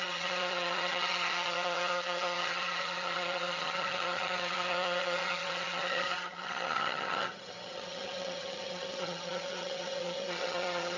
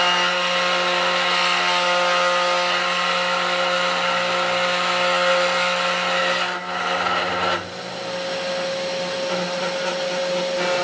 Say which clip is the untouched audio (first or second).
second